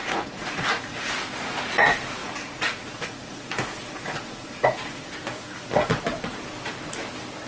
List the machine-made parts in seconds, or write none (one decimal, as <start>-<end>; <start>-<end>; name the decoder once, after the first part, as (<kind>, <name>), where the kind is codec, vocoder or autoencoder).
0.0-1.1 (vocoder, Vocos); 2.2-5.1